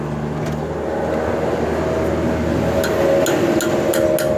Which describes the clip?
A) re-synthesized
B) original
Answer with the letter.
B